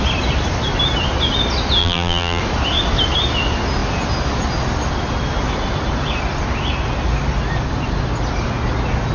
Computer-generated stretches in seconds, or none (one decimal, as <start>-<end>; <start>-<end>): 1.8-2.4